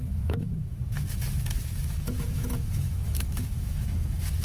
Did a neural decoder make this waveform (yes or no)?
yes